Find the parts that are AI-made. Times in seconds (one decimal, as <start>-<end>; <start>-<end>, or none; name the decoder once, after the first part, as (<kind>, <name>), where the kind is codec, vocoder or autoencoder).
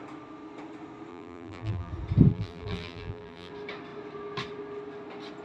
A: 1.1-1.9 (vocoder, BigVGAN v2); 2.3-3.5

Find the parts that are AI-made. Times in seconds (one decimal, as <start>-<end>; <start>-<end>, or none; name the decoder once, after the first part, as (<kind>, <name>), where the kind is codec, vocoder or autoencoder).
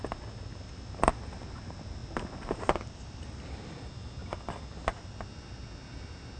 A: none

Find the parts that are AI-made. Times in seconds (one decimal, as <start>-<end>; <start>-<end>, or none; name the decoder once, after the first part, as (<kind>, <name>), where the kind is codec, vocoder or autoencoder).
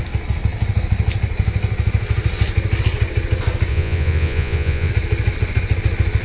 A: 3.7-4.9 (vocoder, Vocos)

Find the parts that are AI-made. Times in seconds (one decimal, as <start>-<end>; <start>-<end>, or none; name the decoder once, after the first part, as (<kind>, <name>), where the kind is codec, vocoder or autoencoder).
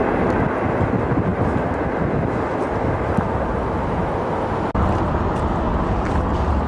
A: none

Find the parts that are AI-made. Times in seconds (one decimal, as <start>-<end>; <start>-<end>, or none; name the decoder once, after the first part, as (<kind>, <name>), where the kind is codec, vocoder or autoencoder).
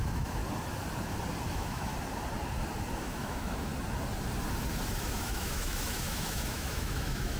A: 0.0-0.4 (autoencoder, DAC-VAE); 1.5-1.9; 3.0-3.7; 5.0-7.4